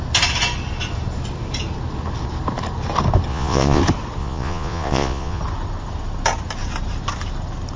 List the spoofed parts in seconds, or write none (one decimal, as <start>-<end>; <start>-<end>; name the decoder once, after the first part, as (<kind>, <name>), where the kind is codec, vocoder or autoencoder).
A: 3.3-3.8 (vocoder, Vocos); 4.2-5.4